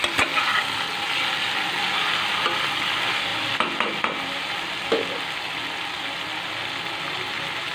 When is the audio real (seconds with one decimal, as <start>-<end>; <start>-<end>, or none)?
0.0-7.7